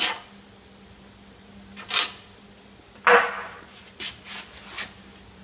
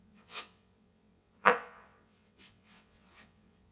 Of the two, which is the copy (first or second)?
second